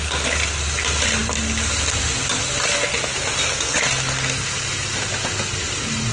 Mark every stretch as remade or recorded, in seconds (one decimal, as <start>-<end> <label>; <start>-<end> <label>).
0.0-6.1 recorded